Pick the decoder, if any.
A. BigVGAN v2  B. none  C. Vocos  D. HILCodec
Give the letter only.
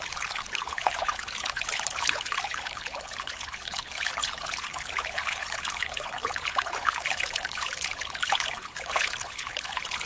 D